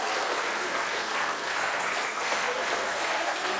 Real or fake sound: fake